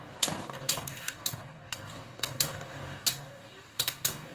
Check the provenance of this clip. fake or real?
fake